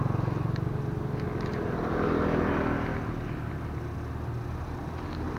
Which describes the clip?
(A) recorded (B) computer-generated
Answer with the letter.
A